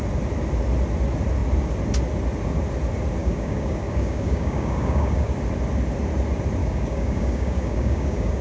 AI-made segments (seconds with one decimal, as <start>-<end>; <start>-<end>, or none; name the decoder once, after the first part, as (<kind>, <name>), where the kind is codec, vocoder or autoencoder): 3.2-5.3 (codec, DAC); 6.6-8.4